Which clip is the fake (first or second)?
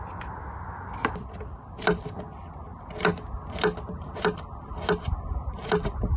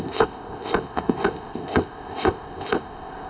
second